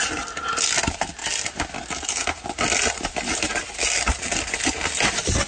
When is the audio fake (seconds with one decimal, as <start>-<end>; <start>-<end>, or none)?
none